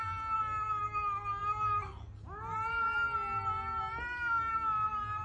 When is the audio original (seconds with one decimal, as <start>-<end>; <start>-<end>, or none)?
0.0-5.2